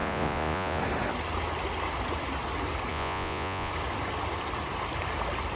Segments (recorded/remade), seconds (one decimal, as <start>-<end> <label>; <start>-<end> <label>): 0.0-0.8 remade; 0.8-2.9 recorded; 2.9-3.7 remade; 3.7-5.6 recorded